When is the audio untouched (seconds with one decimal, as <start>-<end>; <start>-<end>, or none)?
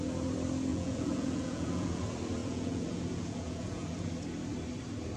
0.0-0.7; 2.0-2.4; 4.1-5.2